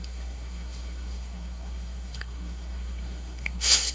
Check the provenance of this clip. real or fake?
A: fake